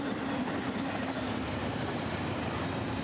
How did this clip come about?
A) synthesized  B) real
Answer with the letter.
B